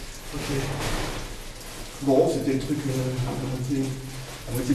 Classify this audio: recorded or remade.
recorded